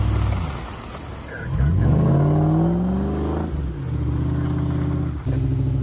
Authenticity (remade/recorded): recorded